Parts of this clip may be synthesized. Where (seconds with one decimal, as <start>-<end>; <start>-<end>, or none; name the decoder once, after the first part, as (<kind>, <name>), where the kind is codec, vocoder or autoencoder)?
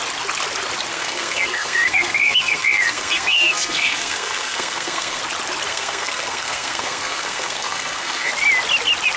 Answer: 0.9-5.2 (codec, SNAC); 5.7-8.3